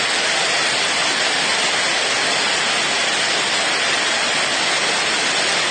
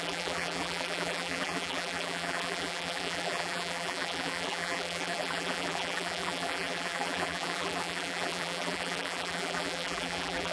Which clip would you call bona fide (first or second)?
first